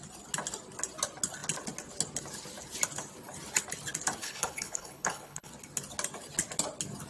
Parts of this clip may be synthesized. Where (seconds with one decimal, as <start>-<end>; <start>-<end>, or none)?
4.2-5.5